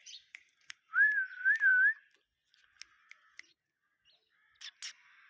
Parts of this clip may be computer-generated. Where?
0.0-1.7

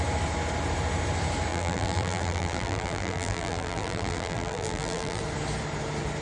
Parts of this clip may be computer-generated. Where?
1.5-5.2

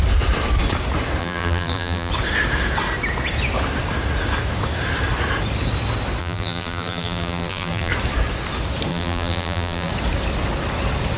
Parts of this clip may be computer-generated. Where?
1.2-2.1; 6.2-7.9; 8.9-9.9

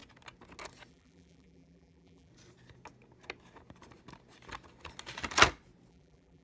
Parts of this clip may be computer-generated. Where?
0.9-2.3; 5.9-6.4

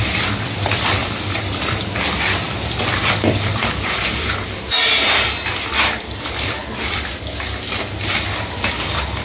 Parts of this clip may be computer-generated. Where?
0.0-6.6; 8.1-9.2

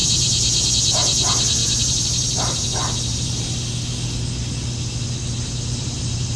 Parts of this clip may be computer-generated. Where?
0.0-0.7; 1.6-3.7